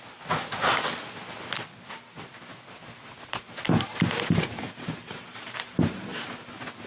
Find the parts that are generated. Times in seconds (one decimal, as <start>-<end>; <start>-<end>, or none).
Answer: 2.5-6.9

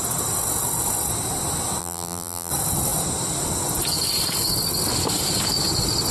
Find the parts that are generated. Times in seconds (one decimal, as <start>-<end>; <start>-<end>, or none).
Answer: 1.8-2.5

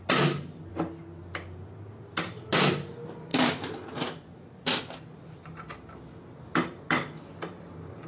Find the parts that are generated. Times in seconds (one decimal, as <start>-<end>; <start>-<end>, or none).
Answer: 3.3-4.8